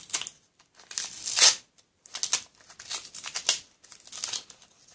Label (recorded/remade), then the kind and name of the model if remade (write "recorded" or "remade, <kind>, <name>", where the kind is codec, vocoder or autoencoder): recorded